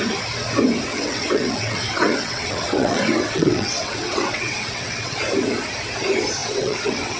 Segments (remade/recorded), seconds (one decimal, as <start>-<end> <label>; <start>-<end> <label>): 0.0-0.9 recorded; 0.9-5.2 remade; 5.2-6.4 recorded; 6.4-7.2 remade

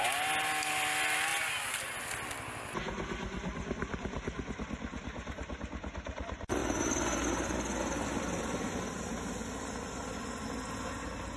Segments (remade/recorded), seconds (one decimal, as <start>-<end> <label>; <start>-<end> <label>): 0.0-11.4 recorded

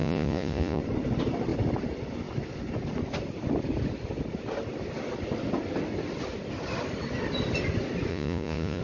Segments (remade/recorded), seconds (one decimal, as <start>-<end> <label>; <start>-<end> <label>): 0.0-0.8 remade; 0.8-8.1 recorded; 8.1-8.8 remade

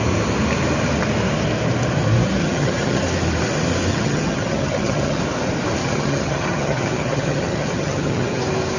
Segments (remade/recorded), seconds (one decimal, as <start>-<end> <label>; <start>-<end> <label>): 0.0-2.4 recorded; 2.4-3.0 remade; 3.0-3.9 recorded; 3.9-5.2 remade; 5.2-5.8 recorded; 5.8-8.4 remade; 8.4-8.8 recorded

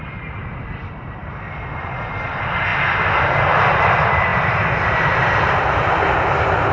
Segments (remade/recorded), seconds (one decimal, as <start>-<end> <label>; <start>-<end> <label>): 0.0-2.7 remade; 2.7-3.2 recorded; 3.2-6.7 remade

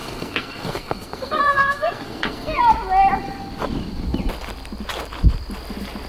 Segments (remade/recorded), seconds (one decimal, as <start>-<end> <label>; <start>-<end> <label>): 0.0-2.6 remade; 2.6-6.1 recorded